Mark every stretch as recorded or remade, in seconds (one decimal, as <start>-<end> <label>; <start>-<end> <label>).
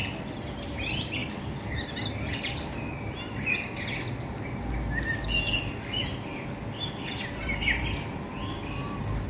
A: 0.0-9.3 recorded